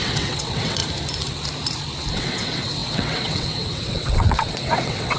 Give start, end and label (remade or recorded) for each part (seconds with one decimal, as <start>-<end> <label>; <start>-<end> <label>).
0.0-0.8 remade; 0.8-2.1 recorded; 2.1-5.2 remade